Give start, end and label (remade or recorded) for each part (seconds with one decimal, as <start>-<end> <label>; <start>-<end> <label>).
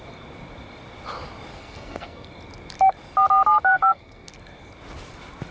0.0-1.5 recorded; 1.5-2.3 remade; 2.3-3.7 recorded; 3.7-4.3 remade; 4.3-5.5 recorded